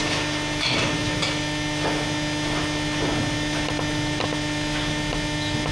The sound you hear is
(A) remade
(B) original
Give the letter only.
B